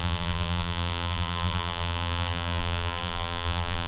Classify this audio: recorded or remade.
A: remade